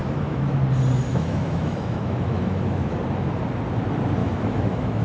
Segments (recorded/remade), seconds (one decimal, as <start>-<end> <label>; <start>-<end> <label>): 0.0-0.6 remade; 0.6-1.1 recorded; 1.1-3.0 remade; 3.0-4.2 recorded; 4.2-5.0 remade